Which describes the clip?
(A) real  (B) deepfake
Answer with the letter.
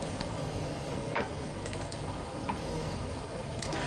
B